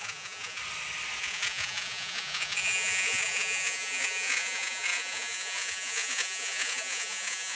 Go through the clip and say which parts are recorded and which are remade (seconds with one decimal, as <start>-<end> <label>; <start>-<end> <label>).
0.0-0.6 remade; 0.6-1.2 recorded; 1.2-7.6 remade